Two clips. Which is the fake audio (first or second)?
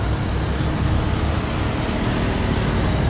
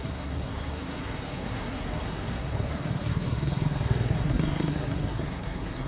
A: second